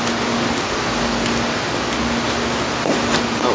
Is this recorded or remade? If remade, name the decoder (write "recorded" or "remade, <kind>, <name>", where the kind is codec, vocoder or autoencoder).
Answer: recorded